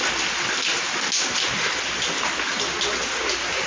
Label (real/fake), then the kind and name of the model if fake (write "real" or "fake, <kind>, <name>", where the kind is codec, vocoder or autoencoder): real